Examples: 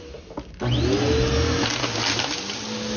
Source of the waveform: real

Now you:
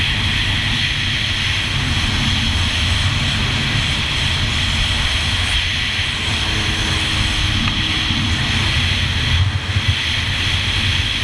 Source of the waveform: real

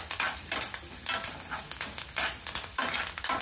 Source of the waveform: real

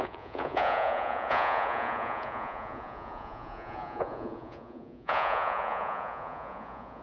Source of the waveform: fake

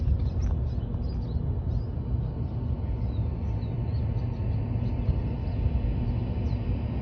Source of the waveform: real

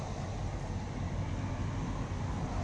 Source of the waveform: real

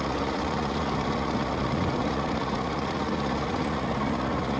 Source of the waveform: fake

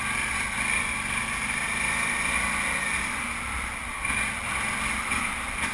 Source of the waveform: real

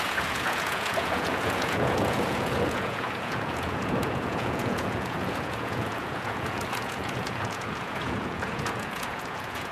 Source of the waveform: fake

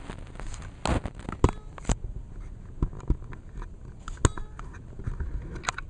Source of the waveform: real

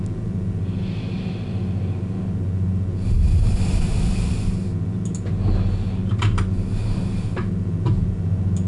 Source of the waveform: real